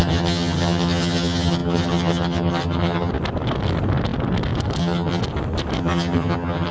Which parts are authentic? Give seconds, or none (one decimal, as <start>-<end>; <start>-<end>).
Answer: 3.1-4.8; 5.2-5.8